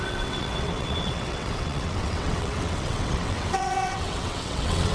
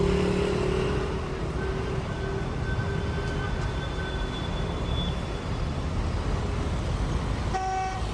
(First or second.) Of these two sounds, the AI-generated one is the first